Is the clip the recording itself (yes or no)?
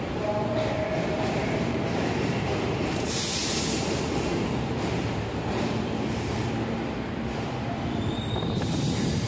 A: no